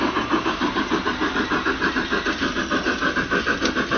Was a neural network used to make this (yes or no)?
no